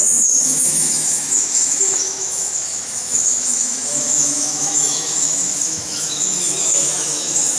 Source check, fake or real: fake